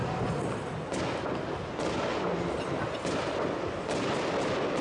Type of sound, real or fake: real